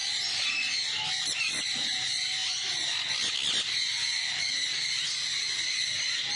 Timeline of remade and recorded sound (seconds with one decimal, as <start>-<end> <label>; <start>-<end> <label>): 0.0-6.4 recorded